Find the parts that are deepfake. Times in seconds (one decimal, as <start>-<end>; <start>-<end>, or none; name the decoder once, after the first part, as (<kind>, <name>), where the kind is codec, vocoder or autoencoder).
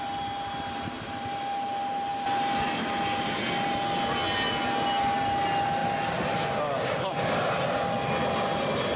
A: none